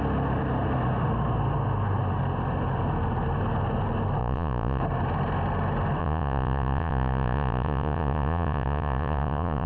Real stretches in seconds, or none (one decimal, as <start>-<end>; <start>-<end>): 0.0-4.2; 4.8-6.0